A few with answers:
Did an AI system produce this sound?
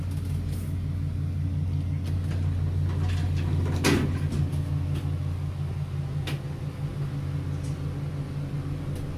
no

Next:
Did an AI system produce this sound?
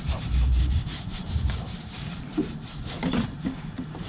yes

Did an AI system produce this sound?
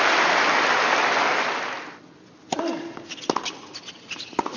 no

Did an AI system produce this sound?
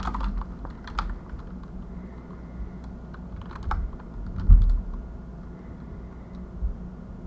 no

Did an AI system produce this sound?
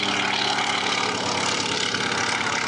no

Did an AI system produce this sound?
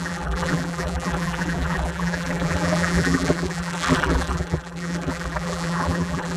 yes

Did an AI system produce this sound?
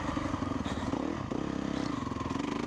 no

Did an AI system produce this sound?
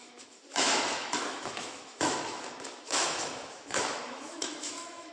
yes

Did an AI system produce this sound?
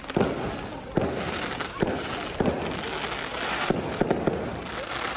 no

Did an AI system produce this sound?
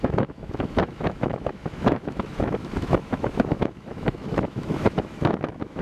yes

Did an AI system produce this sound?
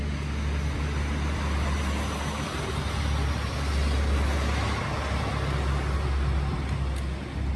no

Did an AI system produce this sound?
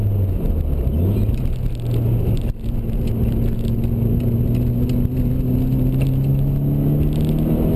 no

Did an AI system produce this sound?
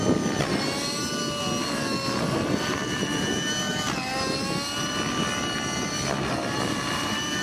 no